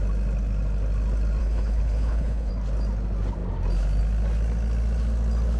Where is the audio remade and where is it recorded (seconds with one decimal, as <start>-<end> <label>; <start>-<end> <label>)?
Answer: 0.0-1.4 recorded; 1.4-2.5 remade; 2.5-5.6 recorded